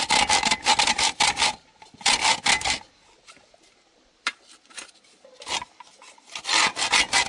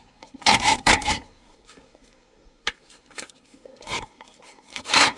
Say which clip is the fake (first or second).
second